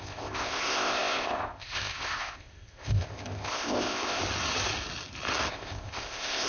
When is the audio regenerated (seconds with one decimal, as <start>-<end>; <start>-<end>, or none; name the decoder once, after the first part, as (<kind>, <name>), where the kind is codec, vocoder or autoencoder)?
0.0-4.2 (codec, ZipCodec); 5.5-6.5